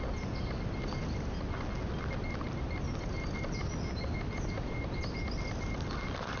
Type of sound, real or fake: real